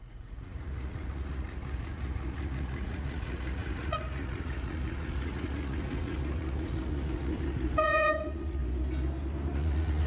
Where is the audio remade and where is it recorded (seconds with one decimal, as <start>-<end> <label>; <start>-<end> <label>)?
0.0-8.6 remade; 8.6-9.5 recorded; 9.5-10.1 remade